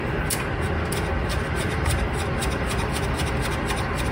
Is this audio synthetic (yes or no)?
no